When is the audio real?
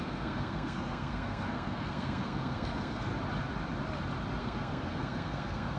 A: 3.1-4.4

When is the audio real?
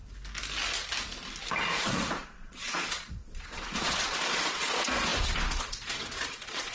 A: 0.0-1.8